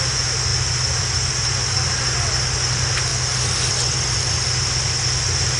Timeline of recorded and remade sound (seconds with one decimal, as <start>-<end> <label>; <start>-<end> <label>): 0.0-5.6 recorded

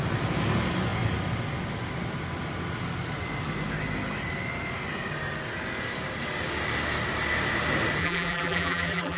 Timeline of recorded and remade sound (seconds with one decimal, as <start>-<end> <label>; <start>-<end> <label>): 0.0-8.0 recorded; 8.0-9.2 remade

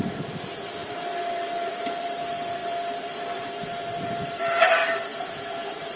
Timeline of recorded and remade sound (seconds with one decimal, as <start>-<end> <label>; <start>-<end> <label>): 0.0-6.0 remade

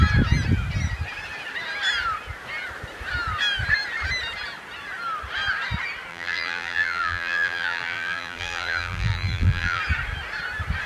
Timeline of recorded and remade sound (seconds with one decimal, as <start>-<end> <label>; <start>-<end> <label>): 0.0-6.1 recorded; 6.1-9.8 remade; 9.8-10.9 recorded

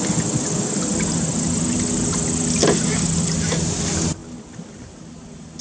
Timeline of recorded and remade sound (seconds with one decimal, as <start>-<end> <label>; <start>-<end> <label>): 0.0-5.6 recorded